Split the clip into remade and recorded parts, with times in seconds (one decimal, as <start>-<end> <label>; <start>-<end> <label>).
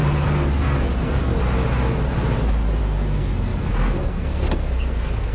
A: 0.0-0.6 recorded; 0.6-1.3 remade; 1.3-2.8 recorded; 2.8-5.3 remade